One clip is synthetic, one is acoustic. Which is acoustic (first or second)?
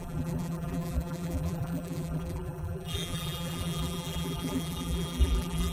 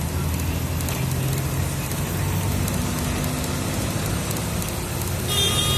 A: second